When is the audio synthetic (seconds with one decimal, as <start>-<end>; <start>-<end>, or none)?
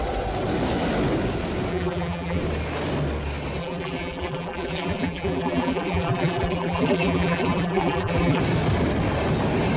1.7-2.4; 3.6-8.4